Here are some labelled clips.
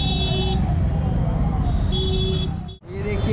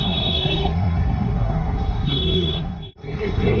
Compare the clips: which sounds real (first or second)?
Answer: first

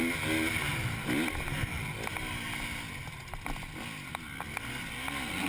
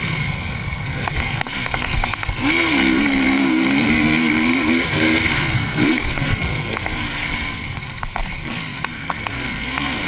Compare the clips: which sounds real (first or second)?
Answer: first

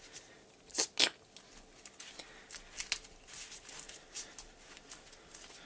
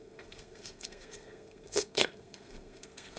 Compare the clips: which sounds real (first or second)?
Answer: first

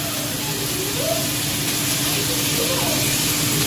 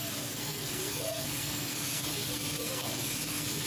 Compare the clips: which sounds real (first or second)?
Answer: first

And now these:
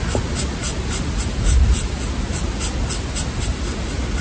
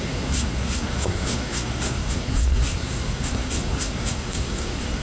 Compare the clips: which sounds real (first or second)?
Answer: first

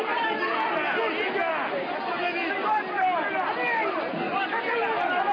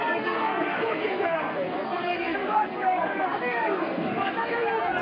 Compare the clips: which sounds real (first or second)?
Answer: first